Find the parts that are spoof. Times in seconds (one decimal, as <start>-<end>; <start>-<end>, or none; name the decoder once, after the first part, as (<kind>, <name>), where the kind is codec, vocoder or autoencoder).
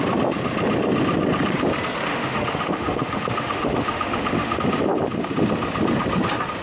2.1-4.6 (autoencoder, DAC-VAE)